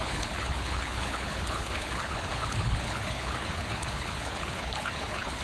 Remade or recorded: remade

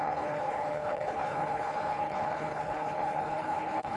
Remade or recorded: remade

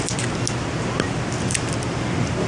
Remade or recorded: recorded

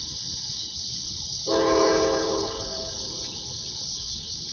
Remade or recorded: remade